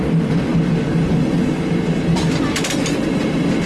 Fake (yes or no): no